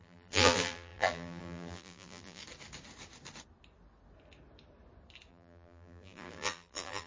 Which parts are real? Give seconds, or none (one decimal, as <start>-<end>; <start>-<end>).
2.4-5.3

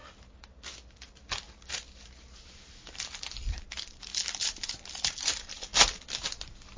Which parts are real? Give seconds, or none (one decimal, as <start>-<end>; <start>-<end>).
4.1-5.3; 5.7-6.8

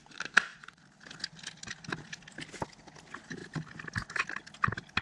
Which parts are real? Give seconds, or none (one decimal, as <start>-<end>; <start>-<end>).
0.0-5.0